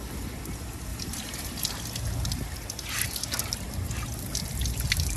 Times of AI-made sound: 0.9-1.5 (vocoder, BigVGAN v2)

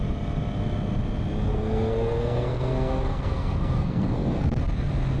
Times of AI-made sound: 1.5-4.6 (codec, SNAC)

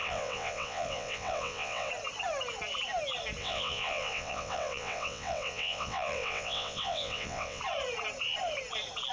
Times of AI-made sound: 0.0-1.9 (vocoder, WaveNeXt); 3.4-7.6

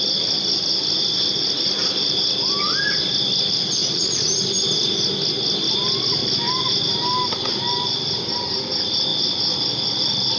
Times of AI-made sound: 3.8-4.3 (vocoder, Vocos)

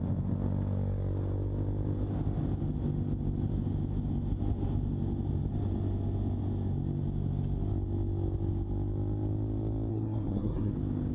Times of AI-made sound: 9.9-10.7 (codec, SNAC)

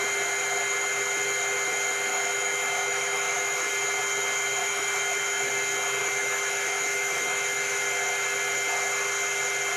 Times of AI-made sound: 2.1-3.7 (autoencoder, DAC-VAE); 4.6-5.5; 6.0-7.8